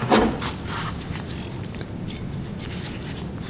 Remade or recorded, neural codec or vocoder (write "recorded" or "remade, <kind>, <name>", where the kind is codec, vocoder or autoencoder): recorded